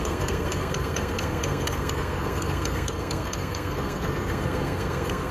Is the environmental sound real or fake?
fake